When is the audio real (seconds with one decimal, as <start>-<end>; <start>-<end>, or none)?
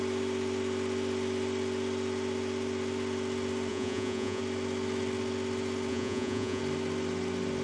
0.0-3.7; 4.4-5.9; 6.6-7.6